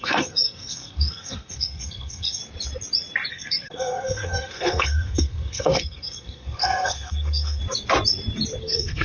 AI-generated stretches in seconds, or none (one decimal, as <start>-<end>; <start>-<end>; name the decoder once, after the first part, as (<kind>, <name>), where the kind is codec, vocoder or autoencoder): 0.0-2.4 (codec, SNAC); 3.3-7.6; 8.6-9.0